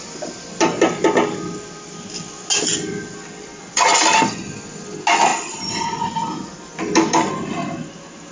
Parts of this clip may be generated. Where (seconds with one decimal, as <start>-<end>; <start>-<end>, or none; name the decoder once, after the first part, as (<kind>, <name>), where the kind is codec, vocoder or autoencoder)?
3.5-4.3 (vocoder, BigVGAN v2); 5.3-6.0